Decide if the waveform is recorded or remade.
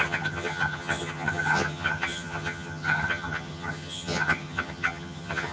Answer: remade